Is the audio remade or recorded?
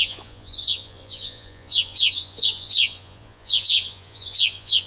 remade